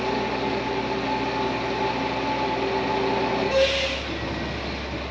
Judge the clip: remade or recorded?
recorded